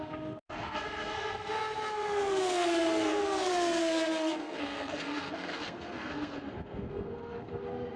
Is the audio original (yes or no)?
no